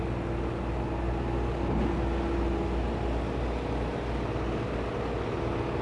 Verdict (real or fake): real